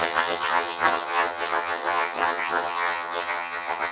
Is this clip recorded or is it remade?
remade